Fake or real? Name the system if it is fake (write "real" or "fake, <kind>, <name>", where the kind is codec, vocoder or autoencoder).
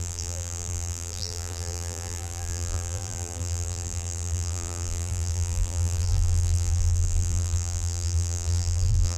fake, vocoder, BigVGAN v2